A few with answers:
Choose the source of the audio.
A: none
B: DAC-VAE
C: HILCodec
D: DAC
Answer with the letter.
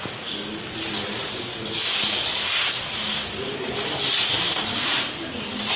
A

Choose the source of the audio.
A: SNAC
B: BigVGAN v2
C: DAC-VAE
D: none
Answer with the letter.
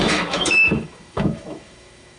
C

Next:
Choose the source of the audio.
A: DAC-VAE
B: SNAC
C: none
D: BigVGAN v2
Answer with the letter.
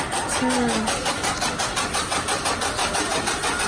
C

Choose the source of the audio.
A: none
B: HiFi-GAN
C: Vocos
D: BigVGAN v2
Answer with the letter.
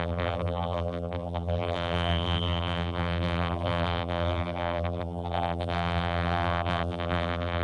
D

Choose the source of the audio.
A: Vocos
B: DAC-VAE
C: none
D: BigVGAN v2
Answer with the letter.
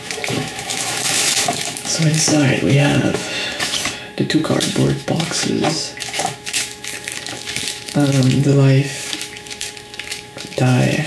B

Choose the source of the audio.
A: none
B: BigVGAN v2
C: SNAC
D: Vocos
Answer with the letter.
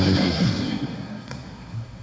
C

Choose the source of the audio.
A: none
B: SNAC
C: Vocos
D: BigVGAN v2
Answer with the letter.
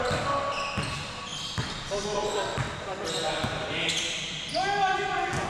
A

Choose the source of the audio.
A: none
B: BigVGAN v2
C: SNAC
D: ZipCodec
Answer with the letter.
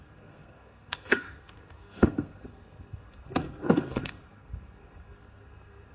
C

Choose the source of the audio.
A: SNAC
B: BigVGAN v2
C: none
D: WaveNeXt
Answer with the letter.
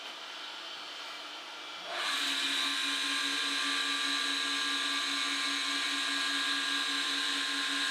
C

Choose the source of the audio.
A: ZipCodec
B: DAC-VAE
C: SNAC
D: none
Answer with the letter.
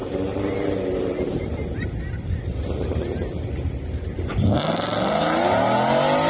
D